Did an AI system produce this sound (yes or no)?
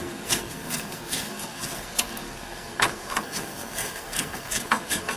yes